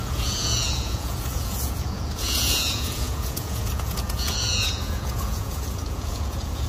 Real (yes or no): no